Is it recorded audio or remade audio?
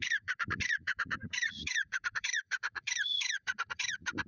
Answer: remade